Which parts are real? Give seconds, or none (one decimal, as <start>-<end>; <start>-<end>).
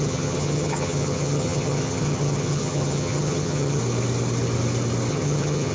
3.8-5.1